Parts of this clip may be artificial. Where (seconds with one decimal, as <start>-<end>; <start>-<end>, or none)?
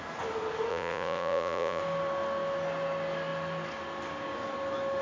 0.7-1.8